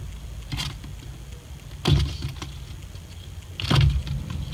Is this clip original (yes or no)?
yes